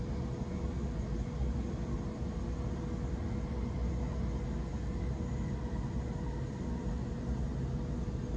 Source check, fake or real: real